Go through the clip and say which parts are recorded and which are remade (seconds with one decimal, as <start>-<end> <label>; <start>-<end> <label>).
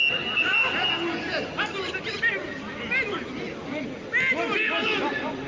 0.0-5.5 recorded